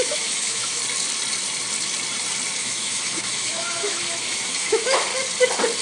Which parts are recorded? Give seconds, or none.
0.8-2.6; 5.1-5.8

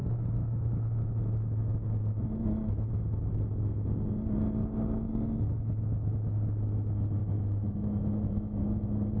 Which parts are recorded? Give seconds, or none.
2.9-7.2

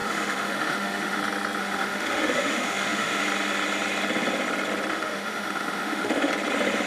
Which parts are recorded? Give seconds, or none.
1.2-1.6; 3.2-4.9; 6.3-6.9

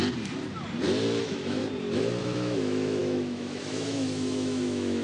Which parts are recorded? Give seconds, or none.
0.0-1.2; 1.6-2.2

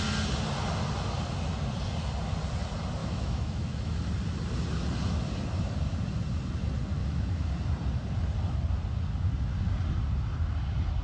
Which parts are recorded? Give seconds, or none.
0.0-3.0; 4.0-7.0; 7.5-11.0

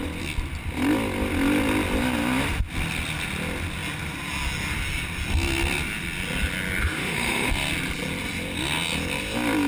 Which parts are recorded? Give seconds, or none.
0.0-6.8; 7.5-9.7

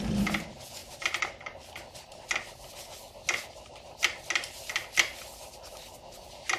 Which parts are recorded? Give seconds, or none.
0.0-6.6